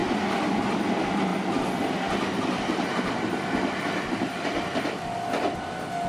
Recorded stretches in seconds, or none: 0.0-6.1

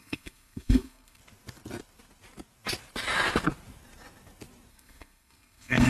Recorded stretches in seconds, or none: 1.2-4.7

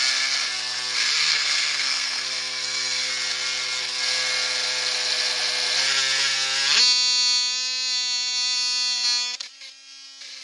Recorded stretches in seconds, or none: 0.0-1.3; 3.1-10.4

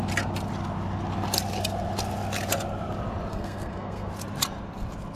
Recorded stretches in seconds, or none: 0.0-3.3; 4.1-5.2

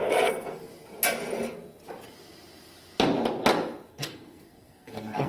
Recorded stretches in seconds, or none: 0.7-3.9